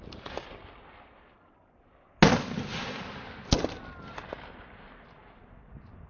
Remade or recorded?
recorded